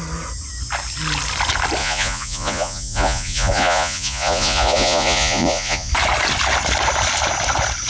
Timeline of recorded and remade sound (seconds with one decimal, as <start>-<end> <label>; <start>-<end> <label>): 0.0-1.8 recorded; 1.8-5.9 remade; 5.9-7.9 recorded